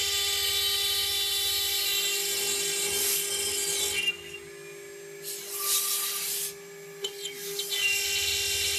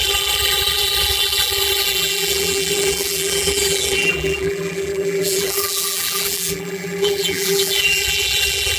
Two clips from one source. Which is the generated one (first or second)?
second